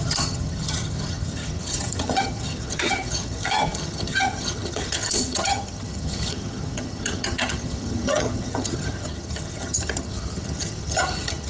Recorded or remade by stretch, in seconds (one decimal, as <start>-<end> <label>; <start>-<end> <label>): 0.0-11.5 remade